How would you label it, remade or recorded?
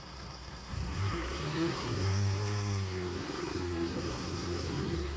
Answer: remade